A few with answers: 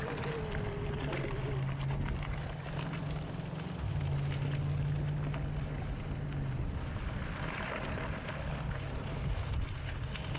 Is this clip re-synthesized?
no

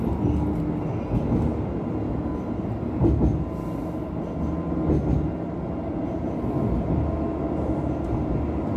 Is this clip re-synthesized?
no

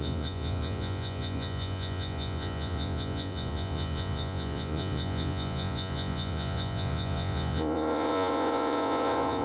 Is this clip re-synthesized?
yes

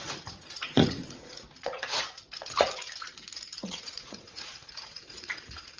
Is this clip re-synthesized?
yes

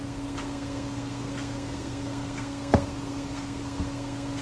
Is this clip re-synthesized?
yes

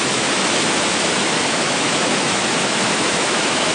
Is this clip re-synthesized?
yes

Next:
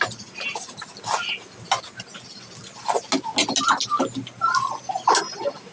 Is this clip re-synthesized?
no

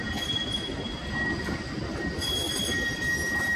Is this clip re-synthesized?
no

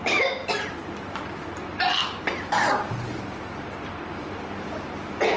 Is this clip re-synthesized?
no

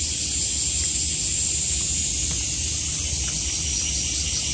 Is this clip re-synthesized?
no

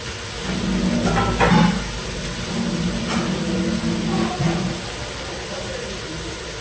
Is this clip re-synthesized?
no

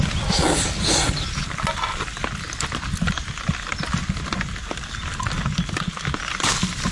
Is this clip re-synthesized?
no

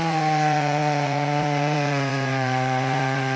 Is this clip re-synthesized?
yes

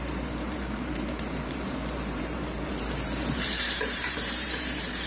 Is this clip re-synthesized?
yes